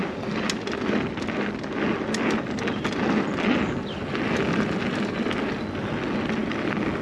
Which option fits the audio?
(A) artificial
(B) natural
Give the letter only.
B